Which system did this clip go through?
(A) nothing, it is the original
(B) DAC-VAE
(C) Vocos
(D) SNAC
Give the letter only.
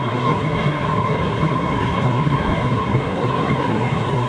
D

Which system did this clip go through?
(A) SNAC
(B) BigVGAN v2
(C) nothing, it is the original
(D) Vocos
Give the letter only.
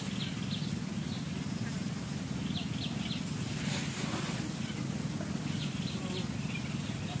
C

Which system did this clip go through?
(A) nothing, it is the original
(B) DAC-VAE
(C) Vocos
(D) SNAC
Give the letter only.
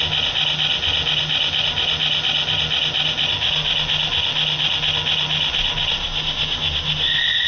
A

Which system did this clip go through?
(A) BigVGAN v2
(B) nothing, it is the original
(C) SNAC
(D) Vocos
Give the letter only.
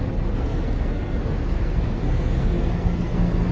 C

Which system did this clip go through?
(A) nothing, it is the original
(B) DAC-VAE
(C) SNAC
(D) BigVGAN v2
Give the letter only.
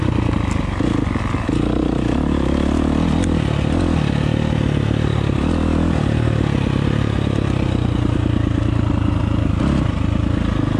A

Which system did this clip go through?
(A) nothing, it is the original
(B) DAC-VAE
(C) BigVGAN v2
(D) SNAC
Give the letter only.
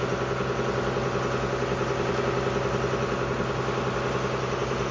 A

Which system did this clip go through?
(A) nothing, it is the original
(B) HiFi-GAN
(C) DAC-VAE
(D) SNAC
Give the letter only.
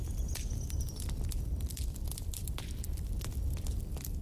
A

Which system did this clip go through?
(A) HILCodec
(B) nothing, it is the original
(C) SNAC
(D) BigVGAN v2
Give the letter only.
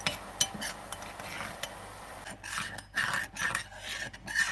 B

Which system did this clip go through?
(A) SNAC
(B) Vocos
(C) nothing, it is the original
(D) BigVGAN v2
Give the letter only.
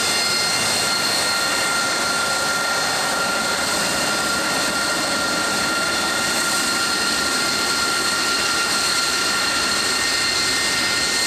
C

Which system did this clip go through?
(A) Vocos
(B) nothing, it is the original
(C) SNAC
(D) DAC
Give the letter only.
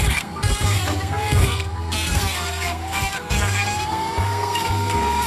C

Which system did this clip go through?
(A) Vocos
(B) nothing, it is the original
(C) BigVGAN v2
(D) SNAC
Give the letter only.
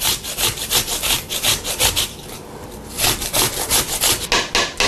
B